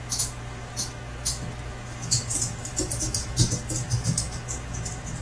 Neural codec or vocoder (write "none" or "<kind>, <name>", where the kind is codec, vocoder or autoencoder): autoencoder, DAC-VAE